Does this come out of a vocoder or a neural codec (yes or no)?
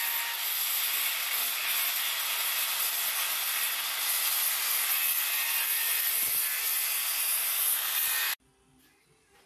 no